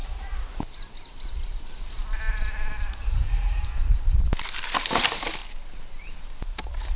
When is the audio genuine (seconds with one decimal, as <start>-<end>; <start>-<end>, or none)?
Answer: 0.5-3.0; 3.6-7.0